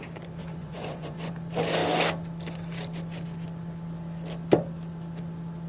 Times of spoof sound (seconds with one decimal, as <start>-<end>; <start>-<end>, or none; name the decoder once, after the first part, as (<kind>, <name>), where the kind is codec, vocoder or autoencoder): 0.4-1.3 (vocoder, Vocos)